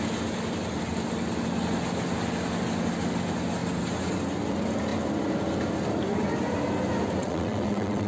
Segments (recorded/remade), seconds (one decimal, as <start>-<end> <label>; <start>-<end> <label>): 0.0-7.2 recorded; 7.2-8.1 remade

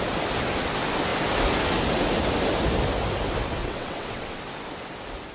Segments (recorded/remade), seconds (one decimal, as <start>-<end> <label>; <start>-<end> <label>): 0.0-3.6 recorded; 3.6-4.4 remade; 4.4-5.3 recorded

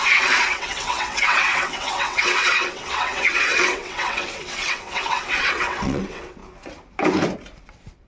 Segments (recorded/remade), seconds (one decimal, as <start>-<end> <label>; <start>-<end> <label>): 0.0-6.4 remade; 6.4-7.6 recorded; 7.6-8.1 remade

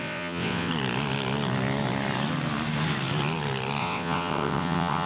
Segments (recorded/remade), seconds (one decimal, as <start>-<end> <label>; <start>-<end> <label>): 0.0-0.7 remade; 0.7-3.8 recorded; 3.8-5.1 remade